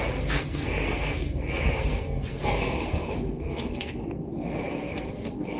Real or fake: fake